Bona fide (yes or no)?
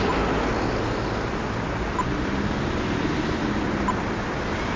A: yes